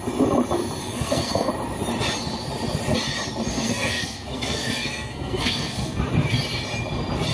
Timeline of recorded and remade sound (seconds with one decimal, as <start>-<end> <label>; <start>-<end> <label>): 0.0-0.8 recorded; 0.8-1.5 remade; 1.5-3.5 recorded; 3.5-6.0 remade; 6.0-7.3 recorded

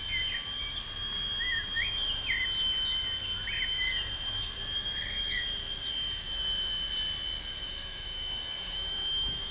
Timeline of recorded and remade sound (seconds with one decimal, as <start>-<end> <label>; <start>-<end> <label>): 0.0-7.6 recorded; 7.6-9.5 remade

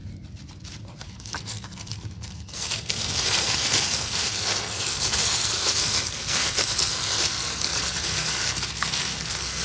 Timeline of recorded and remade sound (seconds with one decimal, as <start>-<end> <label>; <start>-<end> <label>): 0.0-1.0 recorded; 1.0-9.6 remade

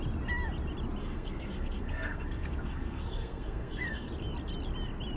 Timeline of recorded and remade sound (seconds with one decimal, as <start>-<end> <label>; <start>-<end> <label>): 0.0-1.0 recorded; 1.0-4.1 remade; 4.1-5.2 recorded

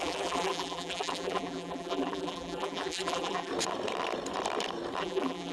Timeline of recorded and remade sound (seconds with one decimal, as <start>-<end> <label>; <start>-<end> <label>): 0.0-3.5 remade; 3.5-5.0 recorded; 5.0-5.5 remade

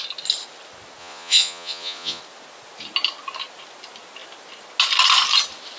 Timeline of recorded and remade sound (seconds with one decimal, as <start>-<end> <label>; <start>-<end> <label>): 0.0-1.0 recorded; 1.0-2.2 remade; 2.2-5.8 recorded

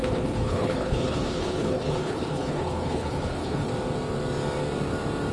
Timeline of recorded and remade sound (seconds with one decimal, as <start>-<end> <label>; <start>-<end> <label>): 0.0-3.7 remade; 3.7-5.3 recorded

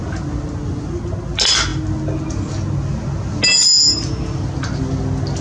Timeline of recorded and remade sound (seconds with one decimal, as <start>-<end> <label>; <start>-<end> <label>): 0.0-5.4 recorded